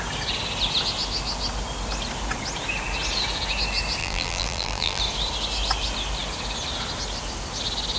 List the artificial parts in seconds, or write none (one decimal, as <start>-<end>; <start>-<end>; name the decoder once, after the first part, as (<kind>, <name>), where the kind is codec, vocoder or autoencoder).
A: 4.0-5.0 (vocoder, BigVGAN v2)